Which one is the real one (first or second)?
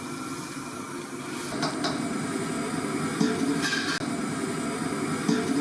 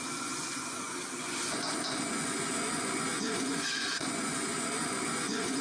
first